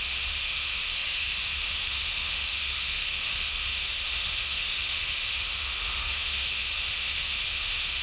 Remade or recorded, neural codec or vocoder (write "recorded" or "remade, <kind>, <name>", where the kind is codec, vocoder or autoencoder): remade, autoencoder, DAC-VAE